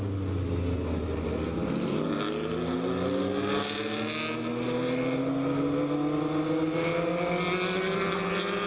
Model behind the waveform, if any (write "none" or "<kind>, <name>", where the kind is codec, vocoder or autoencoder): none